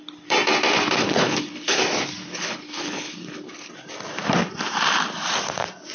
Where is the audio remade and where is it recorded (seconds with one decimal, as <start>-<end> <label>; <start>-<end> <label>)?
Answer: 0.0-1.0 recorded; 1.0-1.8 remade; 1.8-2.2 recorded; 2.2-3.7 remade; 3.7-5.9 recorded